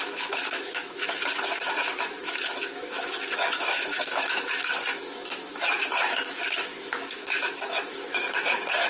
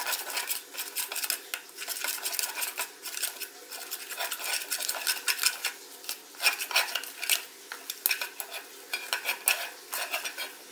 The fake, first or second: first